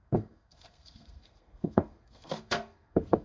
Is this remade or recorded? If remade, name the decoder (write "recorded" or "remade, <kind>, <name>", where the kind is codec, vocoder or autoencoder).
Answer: remade, codec, SNAC